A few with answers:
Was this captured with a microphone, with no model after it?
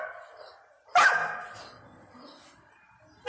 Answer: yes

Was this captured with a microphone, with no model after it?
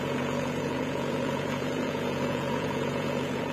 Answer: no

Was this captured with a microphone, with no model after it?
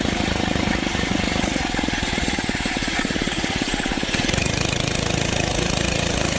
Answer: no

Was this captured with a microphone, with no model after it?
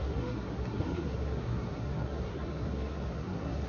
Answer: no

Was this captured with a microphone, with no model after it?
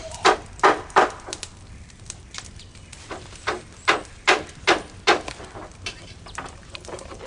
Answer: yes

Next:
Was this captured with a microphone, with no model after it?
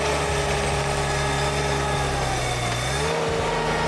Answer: yes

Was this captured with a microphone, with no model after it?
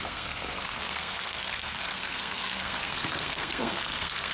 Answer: no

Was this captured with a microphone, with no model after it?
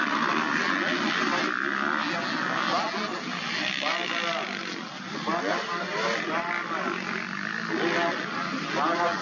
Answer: yes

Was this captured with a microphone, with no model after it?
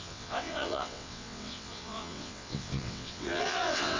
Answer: no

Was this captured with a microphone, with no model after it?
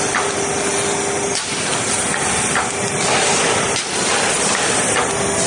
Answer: yes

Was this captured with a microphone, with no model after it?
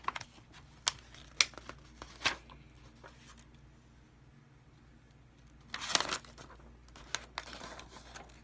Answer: yes